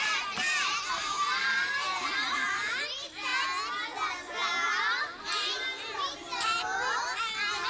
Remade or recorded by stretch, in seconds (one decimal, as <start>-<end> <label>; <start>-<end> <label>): 0.0-3.3 remade; 3.3-5.2 recorded; 5.2-7.7 remade